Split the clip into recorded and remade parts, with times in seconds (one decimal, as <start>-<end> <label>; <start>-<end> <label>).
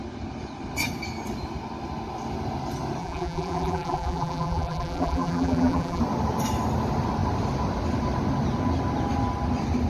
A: 0.0-3.0 recorded; 3.0-6.0 remade; 6.0-9.9 recorded